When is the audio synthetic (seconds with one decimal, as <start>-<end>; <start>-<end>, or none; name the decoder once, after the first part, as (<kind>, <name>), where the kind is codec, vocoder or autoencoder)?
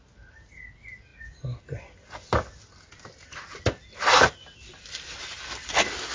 4.4-5.2 (vocoder, BigVGAN v2)